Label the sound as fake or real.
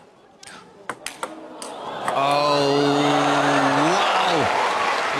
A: real